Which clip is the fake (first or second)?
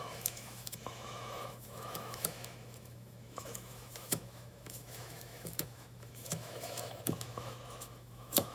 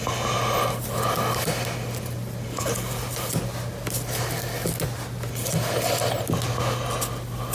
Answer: first